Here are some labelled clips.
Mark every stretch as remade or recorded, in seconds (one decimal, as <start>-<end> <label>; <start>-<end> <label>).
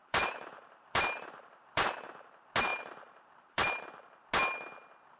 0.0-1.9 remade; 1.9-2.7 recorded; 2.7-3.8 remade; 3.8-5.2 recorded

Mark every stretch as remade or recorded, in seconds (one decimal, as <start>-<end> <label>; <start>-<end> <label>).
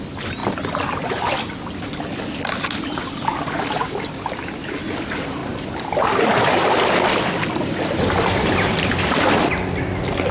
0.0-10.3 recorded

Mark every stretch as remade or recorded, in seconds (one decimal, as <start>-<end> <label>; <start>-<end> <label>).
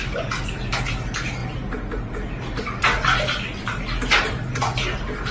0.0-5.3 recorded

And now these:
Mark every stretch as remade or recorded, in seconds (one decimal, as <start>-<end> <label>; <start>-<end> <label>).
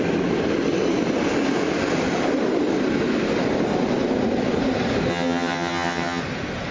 0.0-5.1 recorded; 5.1-6.2 remade; 6.2-6.7 recorded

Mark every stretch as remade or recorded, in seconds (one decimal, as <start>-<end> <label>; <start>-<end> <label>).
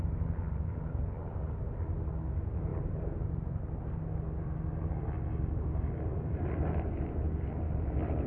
0.0-1.2 recorded; 1.2-1.7 remade; 1.7-2.7 recorded; 2.7-3.8 remade; 3.8-6.1 recorded; 6.1-7.3 remade; 7.3-8.3 recorded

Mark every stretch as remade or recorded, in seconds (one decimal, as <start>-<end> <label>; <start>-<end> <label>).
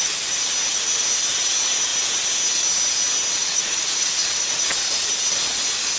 0.0-3.4 recorded; 3.4-5.1 remade; 5.1-6.0 recorded